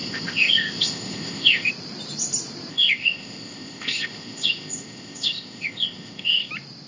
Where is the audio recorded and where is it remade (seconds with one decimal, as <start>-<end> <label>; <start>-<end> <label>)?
0.0-1.7 remade; 1.7-2.7 recorded; 2.7-6.5 remade; 6.5-6.9 recorded